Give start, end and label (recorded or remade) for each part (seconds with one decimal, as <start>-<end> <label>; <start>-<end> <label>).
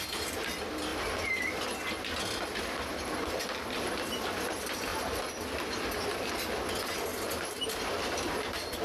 0.0-4.9 recorded; 4.9-5.5 remade; 5.5-7.1 recorded; 7.1-8.8 remade